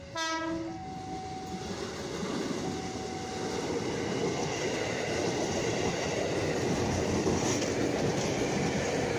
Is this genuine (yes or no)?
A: yes